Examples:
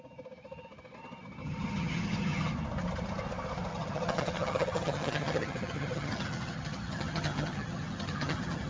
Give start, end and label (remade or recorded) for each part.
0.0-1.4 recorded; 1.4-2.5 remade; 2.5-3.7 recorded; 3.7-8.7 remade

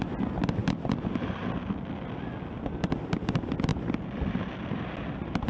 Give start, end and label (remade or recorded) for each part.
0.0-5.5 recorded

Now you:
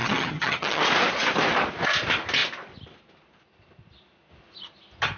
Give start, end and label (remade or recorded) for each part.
0.0-0.8 remade; 0.8-5.2 recorded